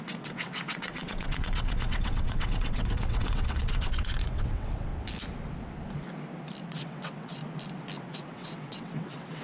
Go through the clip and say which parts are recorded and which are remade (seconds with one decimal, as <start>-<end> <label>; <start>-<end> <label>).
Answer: 0.0-4.9 remade; 4.9-6.7 recorded; 6.7-7.4 remade; 7.4-8.0 recorded; 8.0-9.4 remade